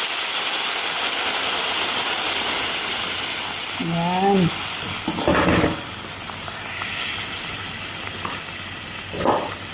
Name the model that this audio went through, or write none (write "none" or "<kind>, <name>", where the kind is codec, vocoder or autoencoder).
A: none